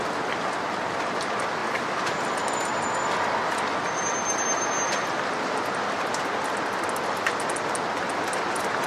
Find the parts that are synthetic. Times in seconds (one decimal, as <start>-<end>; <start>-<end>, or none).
none